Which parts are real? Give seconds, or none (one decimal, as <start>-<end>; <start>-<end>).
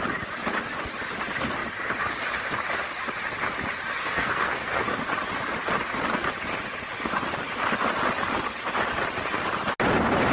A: 0.0-3.9; 5.0-10.3